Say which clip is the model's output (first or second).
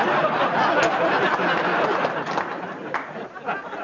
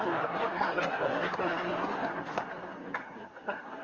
second